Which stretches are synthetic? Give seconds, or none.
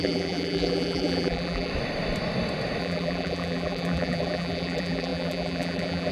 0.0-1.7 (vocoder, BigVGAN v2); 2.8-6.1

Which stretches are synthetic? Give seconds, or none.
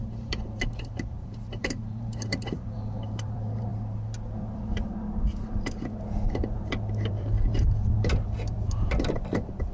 0.0-9.7 (vocoder, BigVGAN v2)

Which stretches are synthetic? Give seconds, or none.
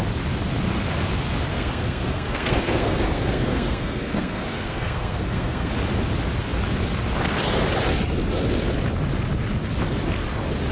1.5-5.7 (codec, SNAC)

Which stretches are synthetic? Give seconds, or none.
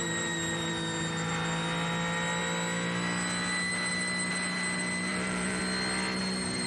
5.1-5.6 (vocoder, BigVGAN v2)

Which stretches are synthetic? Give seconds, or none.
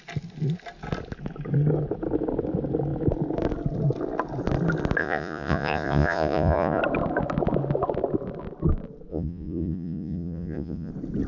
5.0-6.8 (vocoder, Vocos); 9.1-10.9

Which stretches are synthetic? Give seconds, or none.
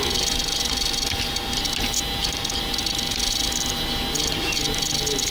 2.2-2.9 (vocoder, BigVGAN v2)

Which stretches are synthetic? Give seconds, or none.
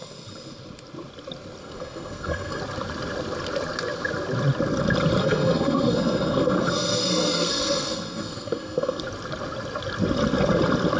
1.6-2.6 (codec, SNAC); 5.2-9.0